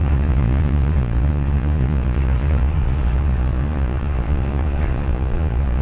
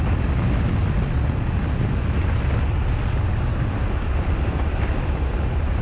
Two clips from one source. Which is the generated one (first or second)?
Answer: first